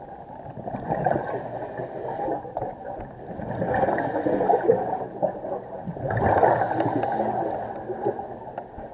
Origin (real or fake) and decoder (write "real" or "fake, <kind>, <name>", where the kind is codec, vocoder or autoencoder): real